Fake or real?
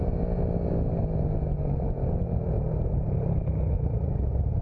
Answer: real